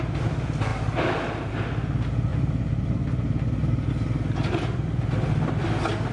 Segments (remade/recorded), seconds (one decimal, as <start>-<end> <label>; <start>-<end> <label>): 0.0-2.3 recorded; 2.3-3.9 remade; 3.9-6.1 recorded